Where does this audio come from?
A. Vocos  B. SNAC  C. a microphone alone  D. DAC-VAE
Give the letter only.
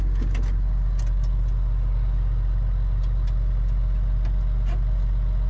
C